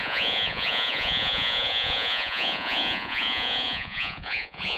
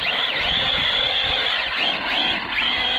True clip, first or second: second